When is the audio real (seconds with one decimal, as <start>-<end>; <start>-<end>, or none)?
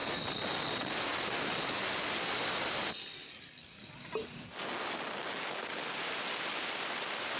1.1-5.5